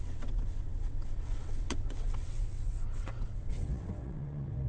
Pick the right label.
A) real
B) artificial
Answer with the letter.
B